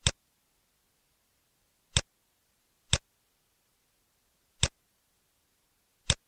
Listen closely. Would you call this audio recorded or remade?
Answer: recorded